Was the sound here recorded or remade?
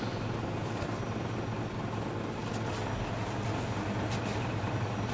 recorded